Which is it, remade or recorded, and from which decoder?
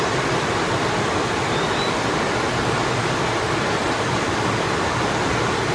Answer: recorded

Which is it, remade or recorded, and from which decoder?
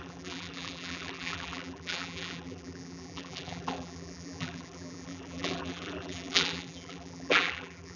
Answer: remade, vocoder, BigVGAN v2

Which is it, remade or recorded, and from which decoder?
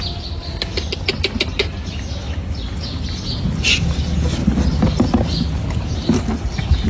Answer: recorded